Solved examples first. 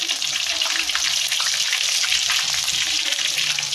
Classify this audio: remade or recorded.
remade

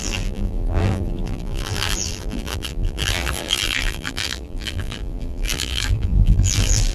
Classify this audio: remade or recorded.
remade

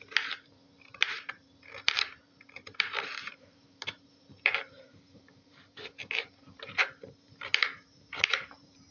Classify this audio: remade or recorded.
remade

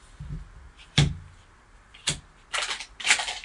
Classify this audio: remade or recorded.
recorded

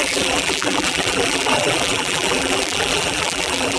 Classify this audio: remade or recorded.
remade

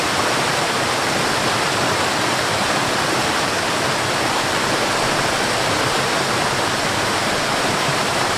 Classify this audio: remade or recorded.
remade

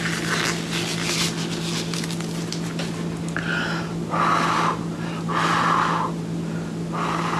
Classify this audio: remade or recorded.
recorded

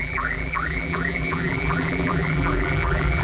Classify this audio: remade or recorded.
remade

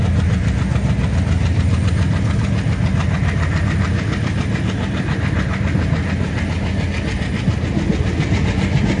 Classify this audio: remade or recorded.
recorded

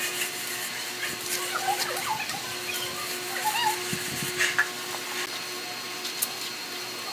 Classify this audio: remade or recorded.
recorded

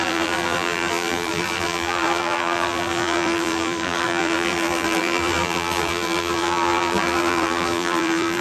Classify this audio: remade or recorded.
remade